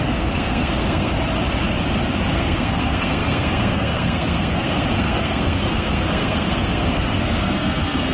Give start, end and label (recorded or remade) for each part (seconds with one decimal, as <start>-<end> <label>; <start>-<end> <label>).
0.0-1.1 remade; 1.1-2.3 recorded; 2.3-8.1 remade